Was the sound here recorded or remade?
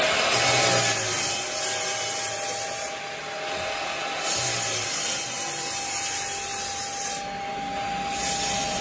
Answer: recorded